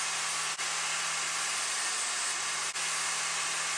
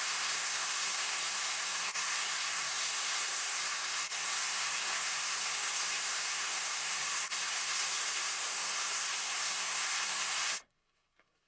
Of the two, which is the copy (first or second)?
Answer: second